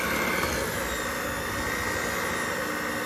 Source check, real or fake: real